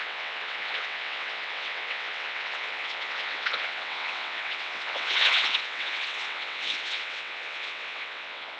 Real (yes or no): no